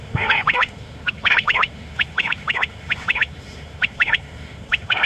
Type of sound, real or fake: fake